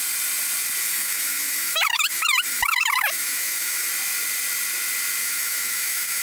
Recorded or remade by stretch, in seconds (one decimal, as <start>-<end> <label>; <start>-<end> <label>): 0.0-0.8 recorded; 0.8-3.9 remade; 3.9-5.2 recorded; 5.2-6.2 remade